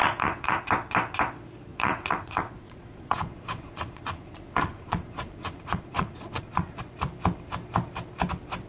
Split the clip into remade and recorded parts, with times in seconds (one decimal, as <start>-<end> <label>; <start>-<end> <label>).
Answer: 0.0-0.6 remade; 0.6-1.7 recorded; 1.7-6.8 remade; 6.8-8.7 recorded